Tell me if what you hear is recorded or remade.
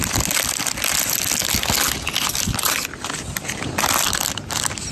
recorded